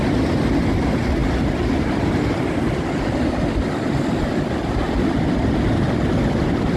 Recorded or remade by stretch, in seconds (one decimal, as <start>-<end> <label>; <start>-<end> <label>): 0.0-6.8 recorded